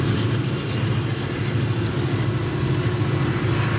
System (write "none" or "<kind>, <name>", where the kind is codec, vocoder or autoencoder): none